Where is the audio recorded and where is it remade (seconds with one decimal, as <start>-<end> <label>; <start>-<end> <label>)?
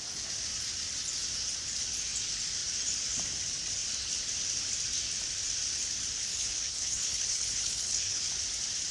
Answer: 0.0-6.3 recorded; 6.3-8.2 remade; 8.2-8.9 recorded